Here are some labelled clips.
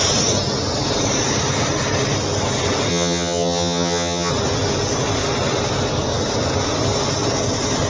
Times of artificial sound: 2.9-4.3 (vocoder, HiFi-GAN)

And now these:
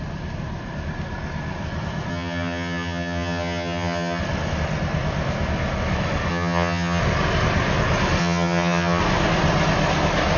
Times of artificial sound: 2.1-4.2 (vocoder, HiFi-GAN); 6.3-7.0; 8.2-9.0